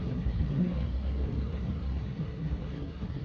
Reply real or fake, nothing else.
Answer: fake